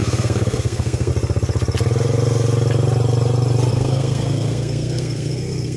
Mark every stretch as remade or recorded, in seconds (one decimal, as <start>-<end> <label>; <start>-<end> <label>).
0.0-1.1 remade; 1.1-3.7 recorded; 3.7-5.8 remade